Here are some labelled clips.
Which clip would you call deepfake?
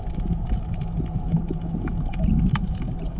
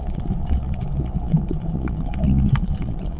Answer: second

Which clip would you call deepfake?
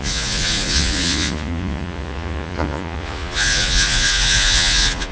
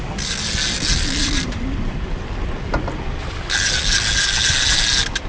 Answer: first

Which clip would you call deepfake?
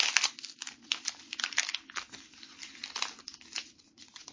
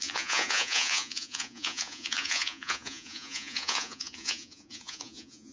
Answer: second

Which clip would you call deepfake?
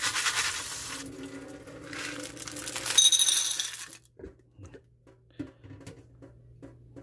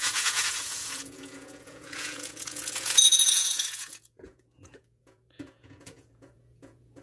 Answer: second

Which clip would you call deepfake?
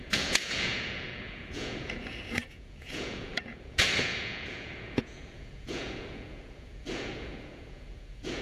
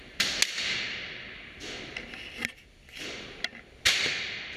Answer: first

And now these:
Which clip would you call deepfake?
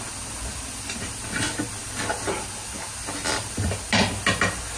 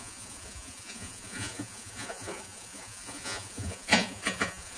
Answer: second